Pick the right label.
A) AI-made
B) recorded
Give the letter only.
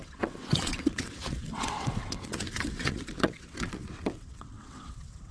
A